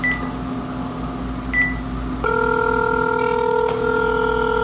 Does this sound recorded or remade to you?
recorded